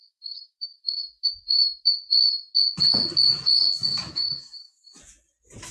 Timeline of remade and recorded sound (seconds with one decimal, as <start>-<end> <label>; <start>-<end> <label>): 0.0-2.5 remade; 2.5-3.9 recorded; 3.9-5.0 remade; 5.0-5.7 recorded

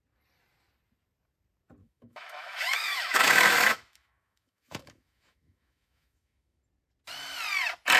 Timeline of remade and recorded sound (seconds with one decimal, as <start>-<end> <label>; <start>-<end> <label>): 0.0-1.8 recorded; 1.8-6.6 remade; 6.6-8.0 recorded